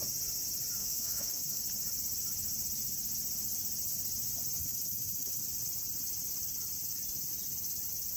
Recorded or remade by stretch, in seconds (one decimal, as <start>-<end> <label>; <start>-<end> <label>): 0.0-0.8 recorded; 0.8-1.6 remade; 1.6-4.6 recorded; 4.6-5.4 remade; 5.4-8.2 recorded